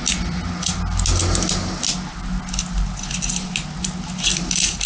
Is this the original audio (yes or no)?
yes